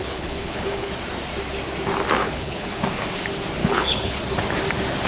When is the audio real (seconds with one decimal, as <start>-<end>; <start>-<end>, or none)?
0.9-2.2; 2.8-3.6; 4.2-5.1